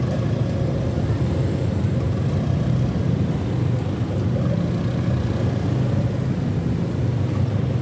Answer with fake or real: real